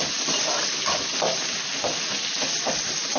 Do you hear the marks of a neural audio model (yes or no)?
no